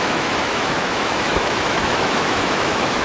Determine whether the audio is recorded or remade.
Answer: remade